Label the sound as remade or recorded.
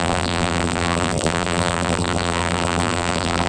remade